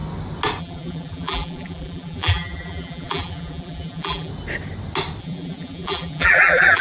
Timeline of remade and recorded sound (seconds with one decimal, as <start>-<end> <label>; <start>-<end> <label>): 0.0-0.6 recorded; 0.6-4.3 remade; 4.3-5.2 recorded; 5.2-6.8 remade